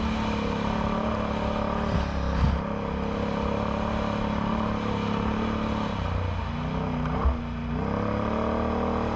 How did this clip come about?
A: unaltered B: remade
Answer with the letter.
A